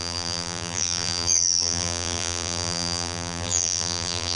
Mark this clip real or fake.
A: fake